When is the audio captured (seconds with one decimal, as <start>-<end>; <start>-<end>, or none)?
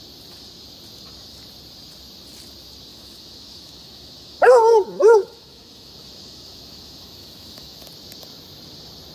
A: 0.0-2.9; 7.8-9.1